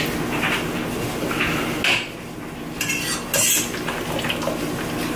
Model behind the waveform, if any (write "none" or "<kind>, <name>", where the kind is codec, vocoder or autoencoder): none